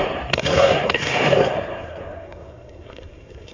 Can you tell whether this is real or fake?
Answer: fake